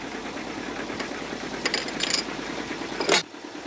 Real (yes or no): yes